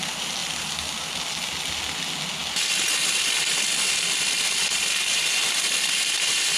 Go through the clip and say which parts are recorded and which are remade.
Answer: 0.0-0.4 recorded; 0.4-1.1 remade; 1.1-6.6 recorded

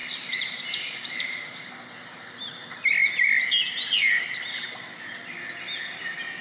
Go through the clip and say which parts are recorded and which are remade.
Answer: 0.0-1.7 remade; 1.7-6.4 recorded